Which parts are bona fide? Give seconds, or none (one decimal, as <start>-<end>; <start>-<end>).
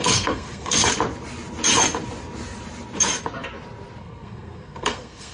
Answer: 0.8-4.0